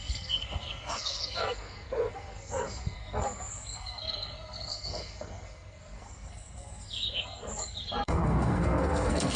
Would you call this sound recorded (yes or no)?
no